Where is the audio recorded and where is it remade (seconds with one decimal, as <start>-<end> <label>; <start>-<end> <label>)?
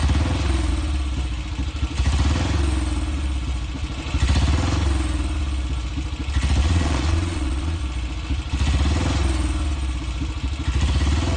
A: 0.0-6.6 recorded; 6.6-7.8 remade; 7.8-11.4 recorded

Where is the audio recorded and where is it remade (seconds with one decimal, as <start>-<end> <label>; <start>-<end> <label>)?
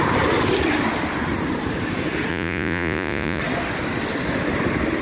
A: 0.0-2.3 recorded; 2.3-3.4 remade; 3.4-5.0 recorded